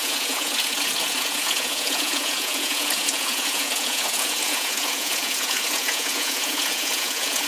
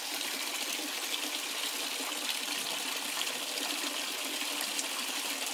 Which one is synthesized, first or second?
first